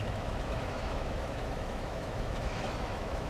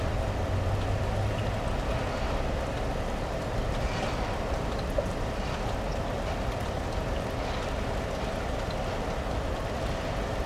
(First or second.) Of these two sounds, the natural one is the second